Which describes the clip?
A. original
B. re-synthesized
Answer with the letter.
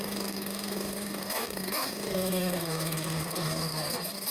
B